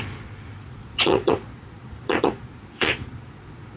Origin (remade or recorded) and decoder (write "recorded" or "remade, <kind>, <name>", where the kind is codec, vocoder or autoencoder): remade, vocoder, Vocos